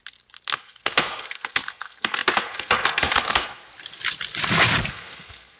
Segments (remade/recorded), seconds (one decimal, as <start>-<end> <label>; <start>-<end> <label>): 0.0-0.6 recorded; 0.6-3.7 remade; 3.7-4.9 recorded; 4.9-5.6 remade